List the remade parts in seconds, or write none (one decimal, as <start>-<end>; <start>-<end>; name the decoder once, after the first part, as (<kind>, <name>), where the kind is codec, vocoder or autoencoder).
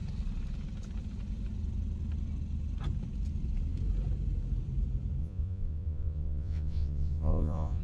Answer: 5.2-7.8 (vocoder, Vocos)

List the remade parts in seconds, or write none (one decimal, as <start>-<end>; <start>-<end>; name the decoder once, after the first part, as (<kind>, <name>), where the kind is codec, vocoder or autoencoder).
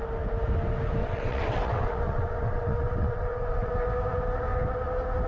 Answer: 1.0-3.7 (vocoder, WaveNeXt)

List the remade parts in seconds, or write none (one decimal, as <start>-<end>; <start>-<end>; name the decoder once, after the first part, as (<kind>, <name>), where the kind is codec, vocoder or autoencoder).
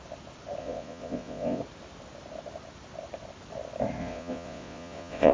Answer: 0.6-1.6 (vocoder, Vocos); 4.0-5.3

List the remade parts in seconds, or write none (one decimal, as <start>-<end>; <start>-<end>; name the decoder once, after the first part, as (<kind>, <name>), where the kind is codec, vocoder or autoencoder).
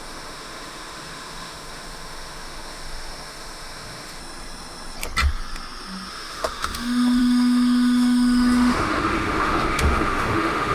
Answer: 0.0-4.2 (autoencoder, DAC-VAE); 6.1-10.7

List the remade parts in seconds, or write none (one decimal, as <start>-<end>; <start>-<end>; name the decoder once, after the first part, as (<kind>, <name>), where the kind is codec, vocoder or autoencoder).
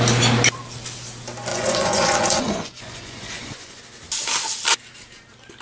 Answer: 1.5-3.8 (vocoder, Vocos)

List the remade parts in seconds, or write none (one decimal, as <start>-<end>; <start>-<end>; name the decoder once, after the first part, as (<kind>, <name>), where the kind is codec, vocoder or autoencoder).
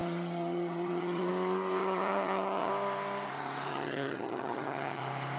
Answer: 0.0-1.3 (vocoder, HiFi-GAN); 1.8-2.7; 3.7-5.0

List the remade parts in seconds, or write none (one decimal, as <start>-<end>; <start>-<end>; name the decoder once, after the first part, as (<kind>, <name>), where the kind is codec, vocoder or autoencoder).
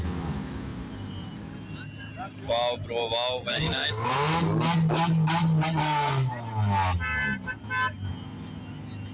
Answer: 3.5-4.1 (codec, SNAC); 5.8-6.3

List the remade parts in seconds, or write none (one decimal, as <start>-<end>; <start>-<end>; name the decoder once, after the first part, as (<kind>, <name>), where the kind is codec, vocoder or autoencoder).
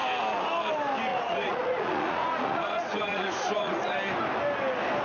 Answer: 1.1-3.7 (vocoder, Vocos)